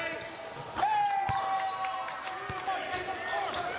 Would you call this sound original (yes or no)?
yes